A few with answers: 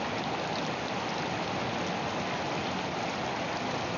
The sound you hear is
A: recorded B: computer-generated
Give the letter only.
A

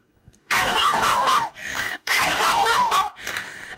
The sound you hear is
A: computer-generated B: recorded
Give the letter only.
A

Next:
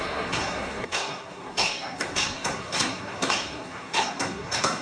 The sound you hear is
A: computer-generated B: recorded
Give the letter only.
A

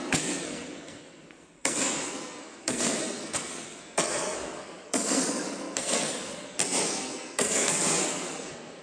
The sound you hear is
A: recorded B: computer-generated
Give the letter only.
B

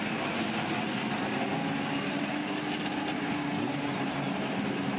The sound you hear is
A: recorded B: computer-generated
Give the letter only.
A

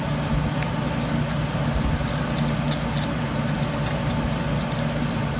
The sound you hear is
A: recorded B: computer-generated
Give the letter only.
A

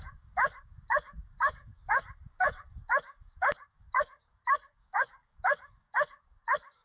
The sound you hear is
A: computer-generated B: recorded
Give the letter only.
A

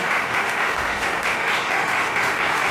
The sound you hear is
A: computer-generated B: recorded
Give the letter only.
A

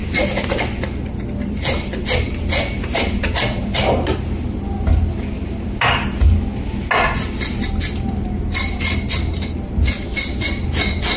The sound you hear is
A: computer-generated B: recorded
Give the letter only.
B